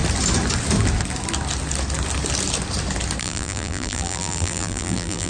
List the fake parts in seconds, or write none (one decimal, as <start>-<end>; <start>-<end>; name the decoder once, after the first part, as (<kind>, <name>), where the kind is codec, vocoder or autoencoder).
3.2-5.3 (vocoder, BigVGAN v2)